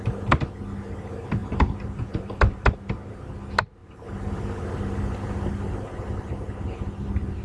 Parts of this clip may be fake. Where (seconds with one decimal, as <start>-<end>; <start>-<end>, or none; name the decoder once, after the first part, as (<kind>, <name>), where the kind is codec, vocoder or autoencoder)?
1.4-3.2 (vocoder, BigVGAN v2); 3.8-4.6